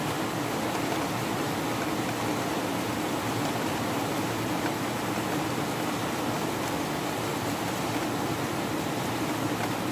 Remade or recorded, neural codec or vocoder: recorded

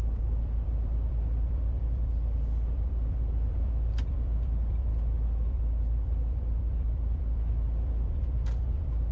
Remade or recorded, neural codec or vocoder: remade, vocoder, BigVGAN v2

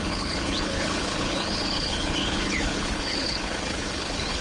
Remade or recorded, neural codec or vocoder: remade, codec, HILCodec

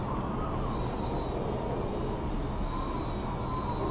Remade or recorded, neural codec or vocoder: recorded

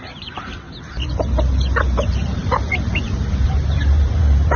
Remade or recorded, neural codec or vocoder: remade, vocoder, BigVGAN v2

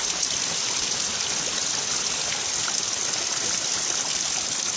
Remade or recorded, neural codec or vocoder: recorded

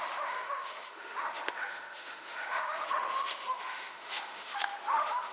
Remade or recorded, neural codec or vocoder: remade, autoencoder, DAC-VAE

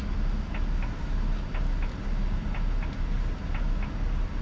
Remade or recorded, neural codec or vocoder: recorded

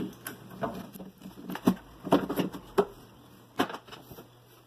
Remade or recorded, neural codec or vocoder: recorded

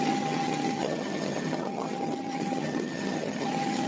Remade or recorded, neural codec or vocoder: remade, vocoder, HiFi-GAN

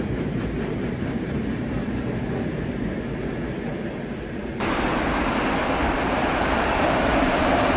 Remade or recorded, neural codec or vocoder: remade, vocoder, BigVGAN v2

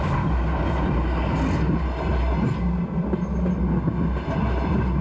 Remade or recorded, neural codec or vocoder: recorded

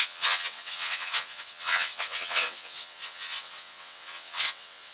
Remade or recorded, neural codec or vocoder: remade, vocoder, WaveNeXt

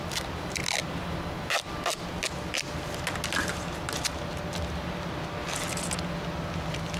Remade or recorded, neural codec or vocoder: recorded